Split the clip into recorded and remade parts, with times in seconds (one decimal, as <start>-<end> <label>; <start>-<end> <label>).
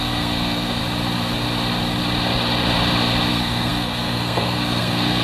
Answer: 0.0-0.8 remade; 0.8-3.3 recorded; 3.3-5.2 remade